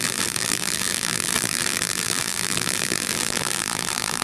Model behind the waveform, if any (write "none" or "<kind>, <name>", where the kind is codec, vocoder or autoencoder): vocoder, BigVGAN v2